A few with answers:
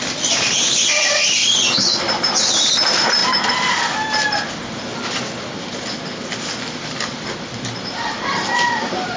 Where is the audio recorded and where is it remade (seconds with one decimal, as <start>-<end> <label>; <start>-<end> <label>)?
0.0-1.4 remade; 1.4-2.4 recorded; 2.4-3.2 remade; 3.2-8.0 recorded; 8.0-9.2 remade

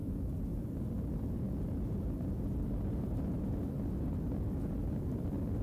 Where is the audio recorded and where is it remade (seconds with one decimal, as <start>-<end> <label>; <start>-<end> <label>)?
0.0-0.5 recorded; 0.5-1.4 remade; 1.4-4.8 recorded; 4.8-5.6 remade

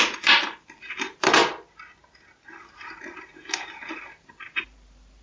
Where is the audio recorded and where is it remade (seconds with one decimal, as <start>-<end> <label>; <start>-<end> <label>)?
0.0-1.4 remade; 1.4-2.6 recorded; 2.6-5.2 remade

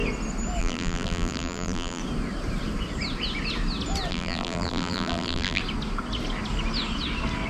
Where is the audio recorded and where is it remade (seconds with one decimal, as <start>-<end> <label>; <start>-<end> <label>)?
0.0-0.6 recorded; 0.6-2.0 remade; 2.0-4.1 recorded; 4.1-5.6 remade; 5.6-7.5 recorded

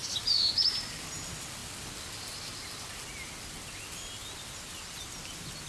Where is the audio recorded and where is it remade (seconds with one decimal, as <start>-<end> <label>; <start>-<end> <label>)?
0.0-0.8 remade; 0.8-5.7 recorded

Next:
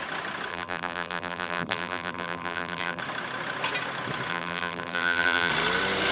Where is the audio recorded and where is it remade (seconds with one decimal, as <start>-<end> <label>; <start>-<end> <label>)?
0.0-0.5 recorded; 0.5-3.0 remade; 3.0-4.3 recorded; 4.3-5.5 remade; 5.5-6.1 recorded